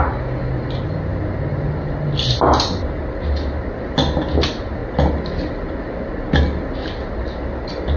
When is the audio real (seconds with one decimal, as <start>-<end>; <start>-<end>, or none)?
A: 0.0-8.0